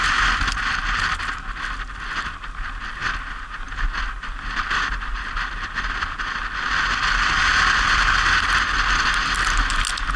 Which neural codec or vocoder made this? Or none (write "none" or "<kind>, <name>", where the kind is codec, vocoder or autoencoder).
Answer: none